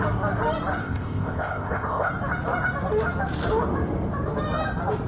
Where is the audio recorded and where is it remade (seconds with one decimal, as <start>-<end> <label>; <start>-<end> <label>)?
0.0-0.8 recorded; 0.8-2.1 remade; 2.1-5.1 recorded